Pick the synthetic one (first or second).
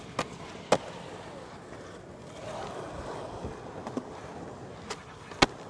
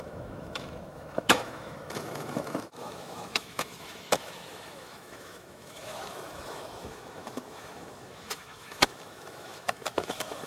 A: second